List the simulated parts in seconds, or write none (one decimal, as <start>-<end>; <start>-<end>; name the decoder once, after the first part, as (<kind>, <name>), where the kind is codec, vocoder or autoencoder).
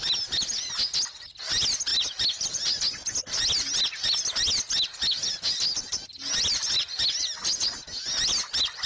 none